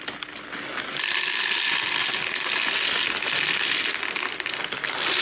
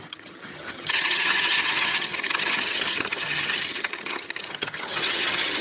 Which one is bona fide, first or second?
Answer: first